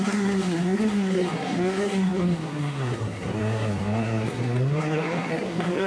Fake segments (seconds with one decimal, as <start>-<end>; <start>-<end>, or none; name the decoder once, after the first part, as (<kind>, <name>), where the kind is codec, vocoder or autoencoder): 0.0-5.9 (codec, SNAC)